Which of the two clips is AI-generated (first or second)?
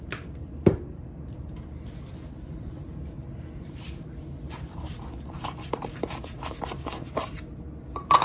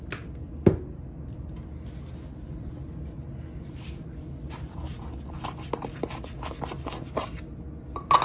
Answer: first